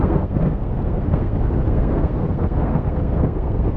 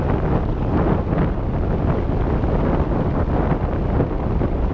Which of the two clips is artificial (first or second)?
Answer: first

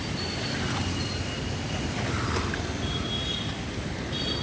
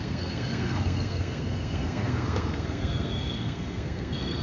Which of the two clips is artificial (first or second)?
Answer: second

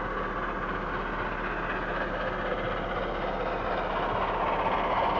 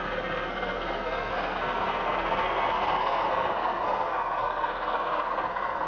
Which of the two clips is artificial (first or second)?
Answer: second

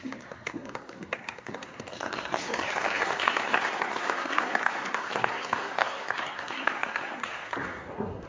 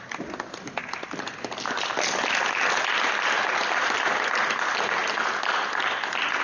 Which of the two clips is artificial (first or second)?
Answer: first